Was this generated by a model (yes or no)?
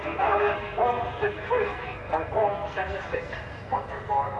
yes